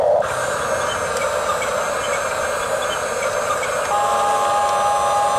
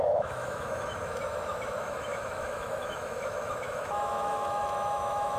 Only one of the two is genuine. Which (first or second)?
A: first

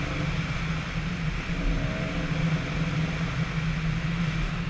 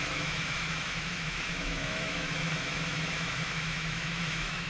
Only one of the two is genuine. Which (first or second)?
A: first